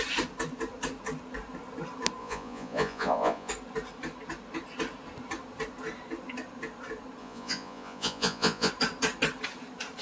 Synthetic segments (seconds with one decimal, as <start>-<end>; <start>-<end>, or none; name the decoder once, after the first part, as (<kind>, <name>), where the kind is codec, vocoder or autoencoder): 2.2-3.5 (vocoder, Vocos); 7.2-8.7